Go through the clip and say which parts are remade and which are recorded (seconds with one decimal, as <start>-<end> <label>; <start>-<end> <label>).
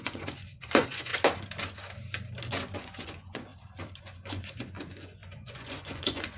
0.0-1.1 remade; 1.1-2.5 recorded; 2.5-3.5 remade; 3.5-4.0 recorded; 4.0-6.4 remade